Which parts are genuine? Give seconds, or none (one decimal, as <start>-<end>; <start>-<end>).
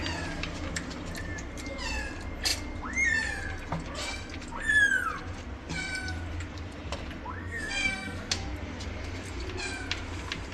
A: 0.0-7.4; 8.3-10.5